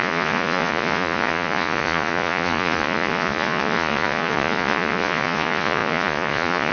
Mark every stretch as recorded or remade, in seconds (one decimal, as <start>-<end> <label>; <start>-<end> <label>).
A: 0.0-6.7 remade